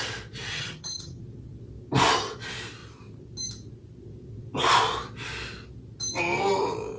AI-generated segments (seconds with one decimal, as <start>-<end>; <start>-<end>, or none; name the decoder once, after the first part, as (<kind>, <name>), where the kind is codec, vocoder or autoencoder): 0.5-1.2 (vocoder, HiFi-GAN)